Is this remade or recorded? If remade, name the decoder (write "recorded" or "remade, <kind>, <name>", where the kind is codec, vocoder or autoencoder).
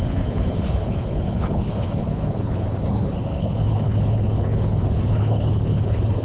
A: remade, codec, HILCodec